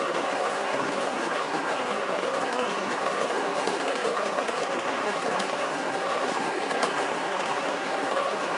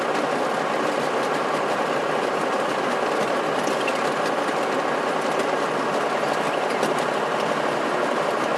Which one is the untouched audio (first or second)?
second